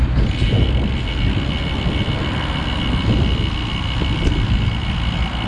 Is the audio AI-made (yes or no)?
no